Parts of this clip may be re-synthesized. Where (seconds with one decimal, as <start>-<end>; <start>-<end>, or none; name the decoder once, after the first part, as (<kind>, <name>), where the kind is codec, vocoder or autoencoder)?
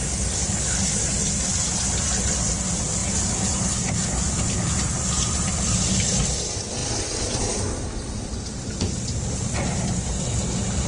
none